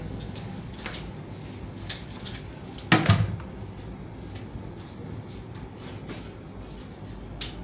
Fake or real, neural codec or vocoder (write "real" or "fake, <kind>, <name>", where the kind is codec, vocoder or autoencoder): real